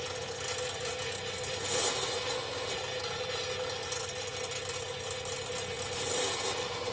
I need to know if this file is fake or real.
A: real